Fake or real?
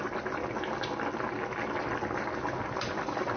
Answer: real